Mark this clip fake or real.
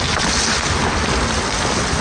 real